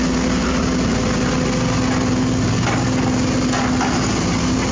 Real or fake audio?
real